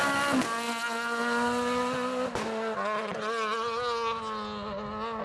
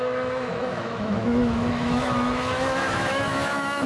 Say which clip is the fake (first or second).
second